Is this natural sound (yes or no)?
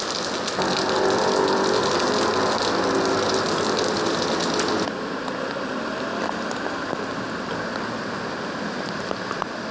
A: yes